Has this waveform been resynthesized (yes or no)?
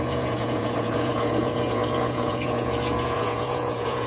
yes